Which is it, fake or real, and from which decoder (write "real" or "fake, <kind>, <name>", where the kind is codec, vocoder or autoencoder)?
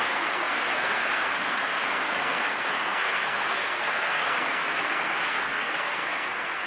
fake, codec, SNAC